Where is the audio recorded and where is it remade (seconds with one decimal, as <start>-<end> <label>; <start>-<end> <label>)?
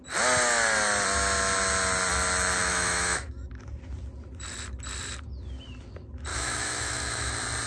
0.0-2.6 recorded; 2.6-3.5 remade; 3.5-6.3 recorded; 6.3-7.3 remade; 7.3-7.7 recorded